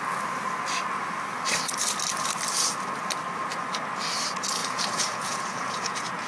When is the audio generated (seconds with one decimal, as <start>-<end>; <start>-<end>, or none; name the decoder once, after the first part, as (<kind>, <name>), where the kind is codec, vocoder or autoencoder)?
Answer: 4.6-6.3 (vocoder, Vocos)